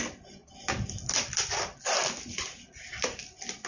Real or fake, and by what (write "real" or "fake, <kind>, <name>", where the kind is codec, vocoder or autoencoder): real